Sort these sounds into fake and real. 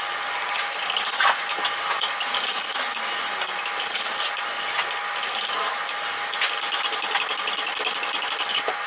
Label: real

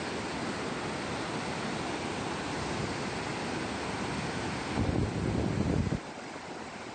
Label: real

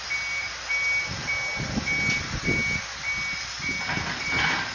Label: real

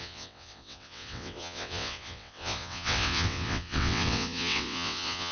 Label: fake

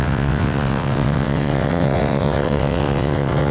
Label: fake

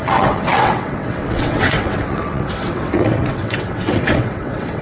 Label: fake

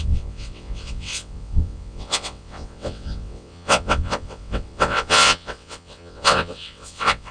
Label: fake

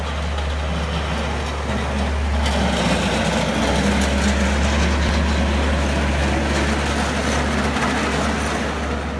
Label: real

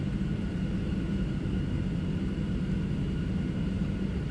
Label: real